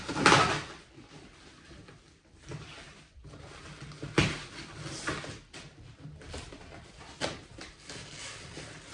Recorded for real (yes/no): yes